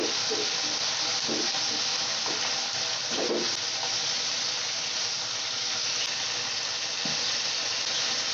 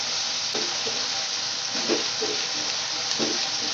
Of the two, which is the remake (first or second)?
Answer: second